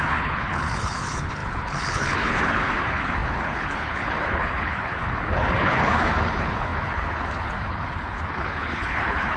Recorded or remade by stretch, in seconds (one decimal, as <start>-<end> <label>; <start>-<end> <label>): 0.0-9.4 remade